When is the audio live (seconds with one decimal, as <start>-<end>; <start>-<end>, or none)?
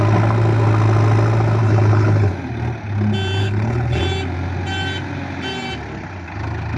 0.0-1.6; 2.3-3.4; 4.0-6.8